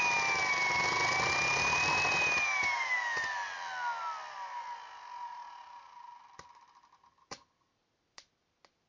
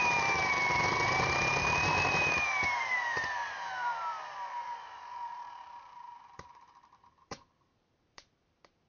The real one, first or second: first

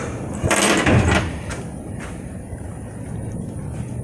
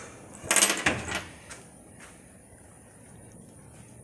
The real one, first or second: second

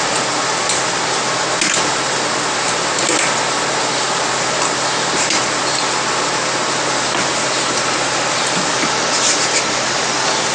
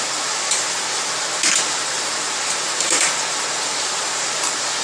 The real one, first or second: first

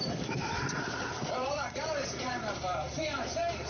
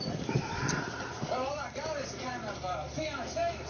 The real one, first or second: second